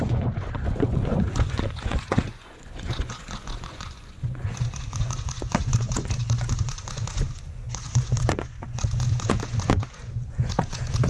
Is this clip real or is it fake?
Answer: fake